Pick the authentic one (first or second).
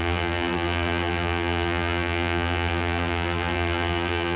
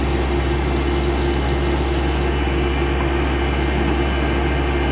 second